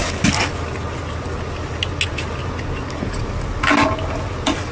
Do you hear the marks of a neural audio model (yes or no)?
no